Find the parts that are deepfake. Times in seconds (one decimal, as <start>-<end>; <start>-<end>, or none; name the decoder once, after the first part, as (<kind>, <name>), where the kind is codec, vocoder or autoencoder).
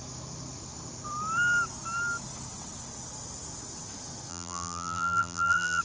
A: 4.3-5.8 (vocoder, BigVGAN v2)